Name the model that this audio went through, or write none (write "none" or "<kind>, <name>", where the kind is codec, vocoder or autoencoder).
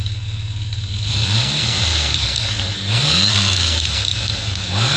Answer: codec, SNAC